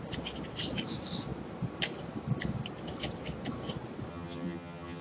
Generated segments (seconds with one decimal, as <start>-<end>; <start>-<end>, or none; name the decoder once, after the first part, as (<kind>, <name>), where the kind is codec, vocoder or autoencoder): 4.1-5.0 (vocoder, HiFi-GAN)